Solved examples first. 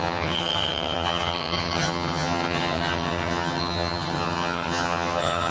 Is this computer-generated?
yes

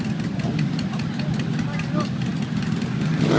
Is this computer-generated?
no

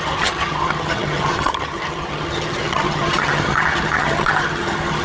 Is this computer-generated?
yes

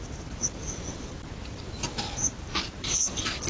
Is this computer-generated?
no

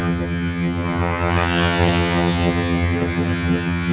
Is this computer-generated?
yes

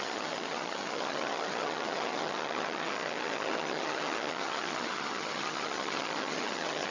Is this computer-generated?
yes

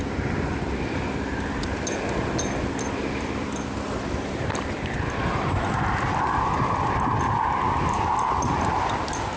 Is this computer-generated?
no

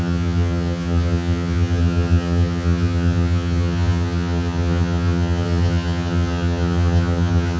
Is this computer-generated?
yes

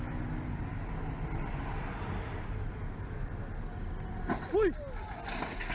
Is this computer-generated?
no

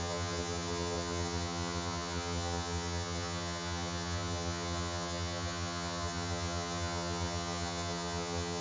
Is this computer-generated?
yes